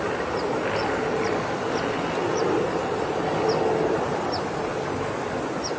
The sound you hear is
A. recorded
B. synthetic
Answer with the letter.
A